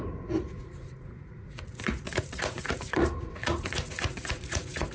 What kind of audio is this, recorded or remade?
remade